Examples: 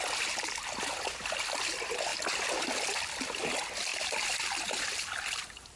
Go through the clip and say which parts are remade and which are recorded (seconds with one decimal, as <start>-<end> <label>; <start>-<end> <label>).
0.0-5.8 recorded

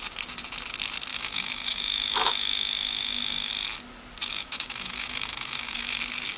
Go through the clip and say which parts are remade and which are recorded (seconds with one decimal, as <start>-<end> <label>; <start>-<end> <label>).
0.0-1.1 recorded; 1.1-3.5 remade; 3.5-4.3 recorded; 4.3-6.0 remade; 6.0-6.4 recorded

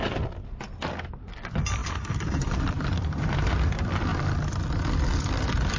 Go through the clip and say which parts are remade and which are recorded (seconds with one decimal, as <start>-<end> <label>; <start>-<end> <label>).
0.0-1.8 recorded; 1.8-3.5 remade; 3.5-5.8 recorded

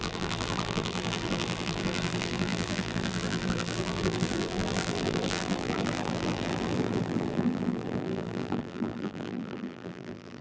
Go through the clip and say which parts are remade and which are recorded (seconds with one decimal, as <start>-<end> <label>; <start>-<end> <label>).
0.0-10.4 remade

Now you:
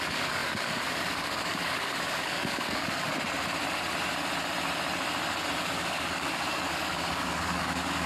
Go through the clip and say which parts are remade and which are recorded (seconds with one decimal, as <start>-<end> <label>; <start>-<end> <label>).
0.0-3.1 remade; 3.1-5.6 recorded; 5.6-8.1 remade

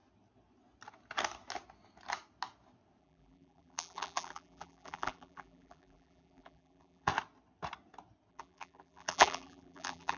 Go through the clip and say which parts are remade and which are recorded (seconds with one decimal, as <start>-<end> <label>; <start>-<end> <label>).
0.0-3.0 recorded; 3.0-7.1 remade; 7.1-8.3 recorded; 8.3-10.2 remade

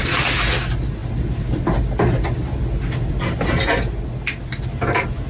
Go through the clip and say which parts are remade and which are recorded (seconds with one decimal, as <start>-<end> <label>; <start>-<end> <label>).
0.0-5.3 recorded